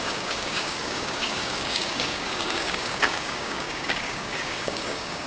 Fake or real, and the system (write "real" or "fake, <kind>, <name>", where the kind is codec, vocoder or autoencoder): fake, codec, DAC